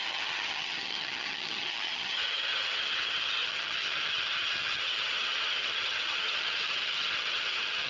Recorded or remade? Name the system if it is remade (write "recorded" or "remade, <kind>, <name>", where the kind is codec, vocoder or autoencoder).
remade, vocoder, HiFi-GAN